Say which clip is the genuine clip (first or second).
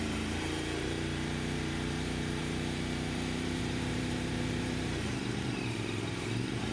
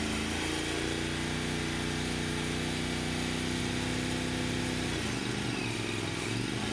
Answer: second